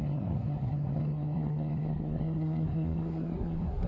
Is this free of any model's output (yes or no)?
no